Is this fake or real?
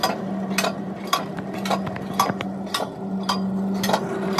real